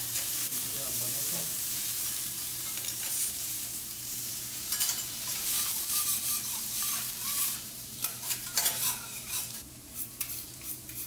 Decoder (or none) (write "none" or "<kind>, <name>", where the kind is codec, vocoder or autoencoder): vocoder, BigVGAN v2